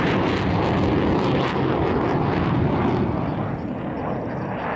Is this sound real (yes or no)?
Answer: yes